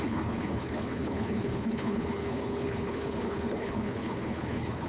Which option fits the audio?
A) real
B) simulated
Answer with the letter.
B